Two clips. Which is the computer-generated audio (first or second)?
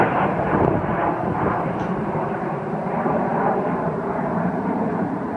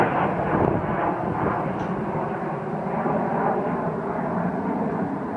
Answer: first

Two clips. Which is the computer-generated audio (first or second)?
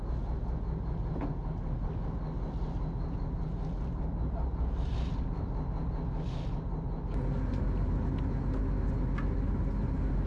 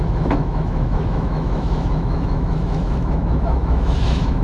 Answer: second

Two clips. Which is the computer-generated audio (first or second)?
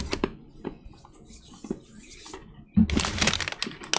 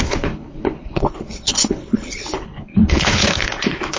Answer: second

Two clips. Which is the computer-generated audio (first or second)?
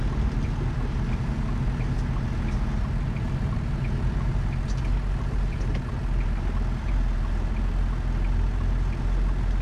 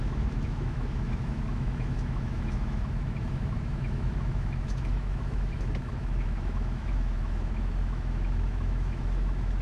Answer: second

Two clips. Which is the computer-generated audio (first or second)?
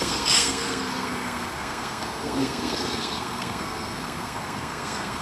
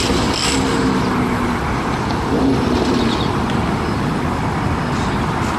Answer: first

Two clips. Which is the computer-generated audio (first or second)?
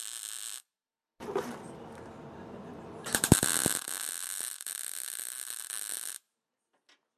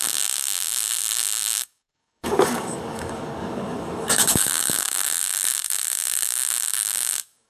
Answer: second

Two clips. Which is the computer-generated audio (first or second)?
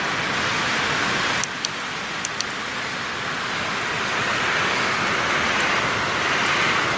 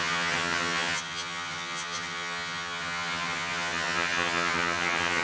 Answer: second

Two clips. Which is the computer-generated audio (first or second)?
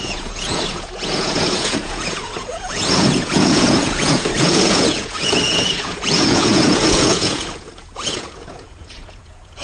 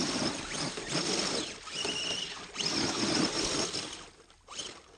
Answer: first